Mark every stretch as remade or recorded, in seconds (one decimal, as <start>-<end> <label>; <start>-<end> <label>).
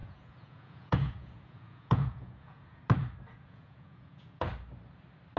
0.0-2.8 remade; 2.8-3.3 recorded; 3.3-4.5 remade; 4.5-5.4 recorded